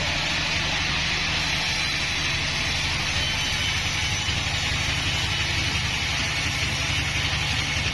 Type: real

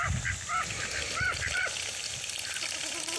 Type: real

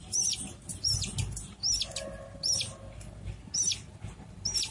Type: real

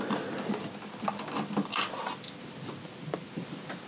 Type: real